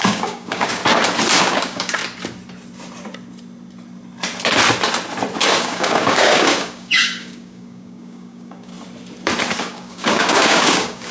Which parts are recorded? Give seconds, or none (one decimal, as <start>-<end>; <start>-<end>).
0.8-1.4; 2.0-5.4; 8.7-9.6

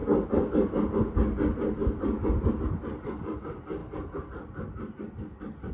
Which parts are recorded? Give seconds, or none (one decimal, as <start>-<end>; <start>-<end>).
0.0-5.7

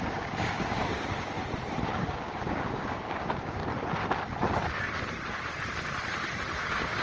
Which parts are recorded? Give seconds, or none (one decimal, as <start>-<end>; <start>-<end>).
1.4-2.0; 3.6-6.6

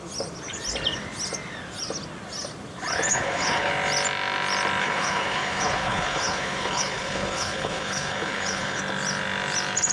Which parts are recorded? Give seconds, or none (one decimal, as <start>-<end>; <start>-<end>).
0.0-3.1; 3.7-4.8; 8.8-9.9

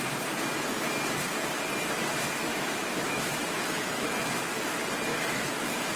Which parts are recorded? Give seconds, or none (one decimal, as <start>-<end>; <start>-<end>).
0.0-2.5; 4.4-5.1

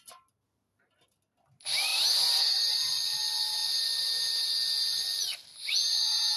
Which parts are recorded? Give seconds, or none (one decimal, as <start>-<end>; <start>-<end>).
0.0-1.9; 2.9-6.4

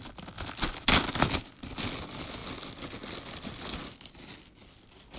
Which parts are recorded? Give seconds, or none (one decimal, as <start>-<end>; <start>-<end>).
0.0-5.2

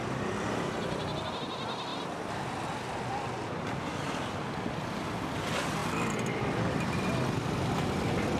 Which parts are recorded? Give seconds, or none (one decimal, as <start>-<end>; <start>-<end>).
0.0-5.8; 7.7-8.4